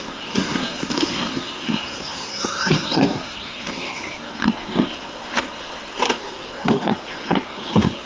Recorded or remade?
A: remade